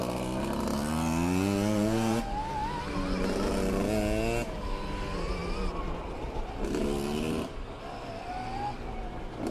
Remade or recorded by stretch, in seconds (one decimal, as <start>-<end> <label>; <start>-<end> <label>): 0.0-9.5 recorded